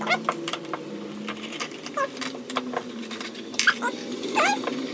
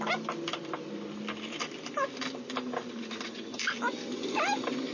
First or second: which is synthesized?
first